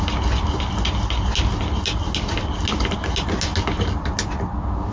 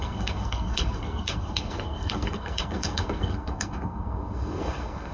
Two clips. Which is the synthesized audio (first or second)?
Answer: second